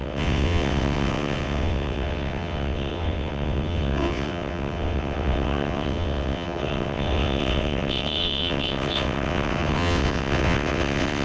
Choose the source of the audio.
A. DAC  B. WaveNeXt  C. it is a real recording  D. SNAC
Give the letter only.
B